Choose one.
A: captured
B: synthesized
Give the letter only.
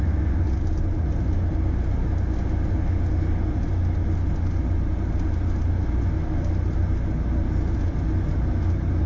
A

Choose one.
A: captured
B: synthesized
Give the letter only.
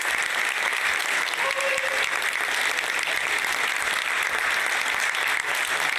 A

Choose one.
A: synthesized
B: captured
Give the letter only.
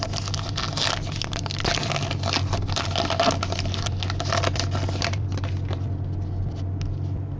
B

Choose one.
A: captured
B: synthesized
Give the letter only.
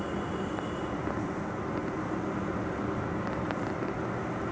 A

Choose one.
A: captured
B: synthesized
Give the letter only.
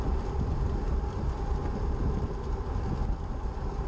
A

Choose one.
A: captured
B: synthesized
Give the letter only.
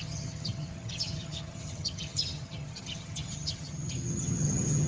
B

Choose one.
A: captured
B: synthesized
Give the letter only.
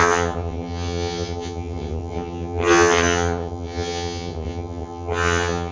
B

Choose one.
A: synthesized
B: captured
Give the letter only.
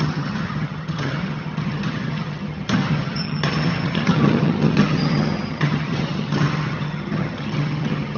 A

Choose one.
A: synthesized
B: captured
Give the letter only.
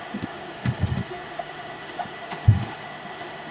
A